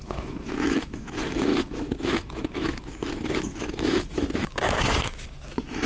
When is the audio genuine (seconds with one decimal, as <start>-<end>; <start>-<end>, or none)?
none